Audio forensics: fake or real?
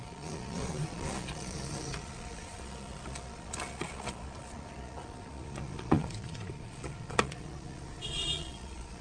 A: fake